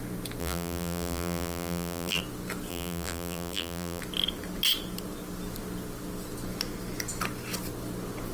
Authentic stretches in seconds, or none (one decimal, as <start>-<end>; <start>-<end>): 0.0-0.4; 2.2-2.7; 4.0-8.3